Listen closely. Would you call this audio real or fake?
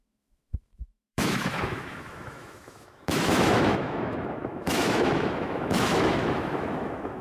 fake